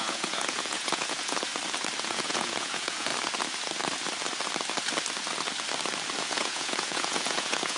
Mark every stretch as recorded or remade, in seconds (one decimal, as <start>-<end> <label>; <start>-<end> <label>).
0.0-1.5 remade; 1.5-2.0 recorded; 2.0-3.1 remade; 3.1-6.2 recorded; 6.2-7.8 remade